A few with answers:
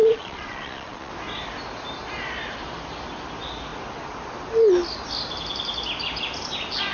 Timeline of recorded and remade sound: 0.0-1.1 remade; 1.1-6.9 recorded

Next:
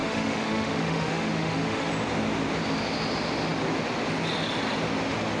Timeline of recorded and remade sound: 0.0-1.9 remade; 1.9-5.4 recorded

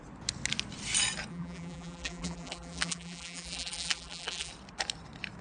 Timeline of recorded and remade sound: 0.0-1.3 recorded; 1.3-4.5 remade; 4.5-5.4 recorded

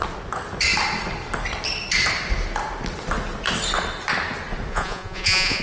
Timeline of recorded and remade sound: 0.0-4.7 recorded; 4.7-5.6 remade

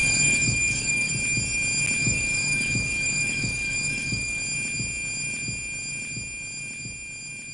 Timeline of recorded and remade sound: 0.0-1.1 remade; 1.1-2.0 recorded; 2.0-4.4 remade; 4.4-7.5 recorded

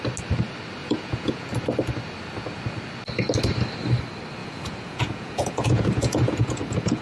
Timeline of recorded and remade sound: 0.0-0.8 recorded; 0.8-1.5 remade; 1.5-4.4 recorded; 4.4-7.0 remade

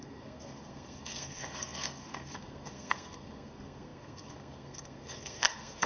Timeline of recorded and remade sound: 0.0-5.9 remade